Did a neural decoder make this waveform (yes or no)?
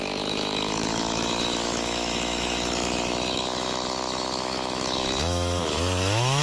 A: yes